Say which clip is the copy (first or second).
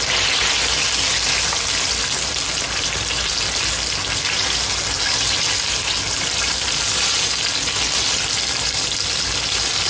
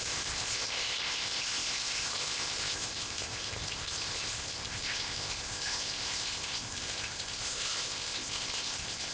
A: second